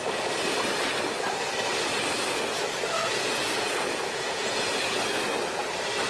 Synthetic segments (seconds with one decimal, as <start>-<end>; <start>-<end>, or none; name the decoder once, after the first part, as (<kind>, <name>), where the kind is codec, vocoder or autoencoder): 3.0-4.7 (vocoder, Vocos)